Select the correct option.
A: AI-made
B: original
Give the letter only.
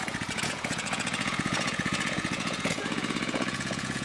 A